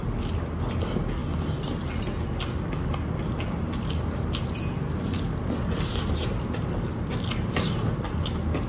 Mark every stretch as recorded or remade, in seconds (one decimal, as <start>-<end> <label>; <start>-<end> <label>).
0.0-8.7 recorded

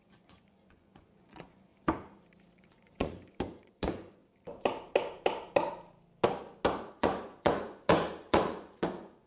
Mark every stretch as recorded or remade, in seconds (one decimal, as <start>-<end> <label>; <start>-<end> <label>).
0.0-1.7 remade; 1.7-2.5 recorded; 2.5-4.2 remade; 4.2-6.9 recorded; 6.9-9.3 remade

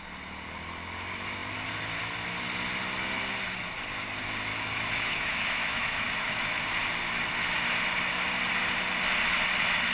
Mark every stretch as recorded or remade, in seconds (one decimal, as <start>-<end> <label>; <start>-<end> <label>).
0.0-4.5 recorded; 4.5-6.6 remade; 6.6-9.9 recorded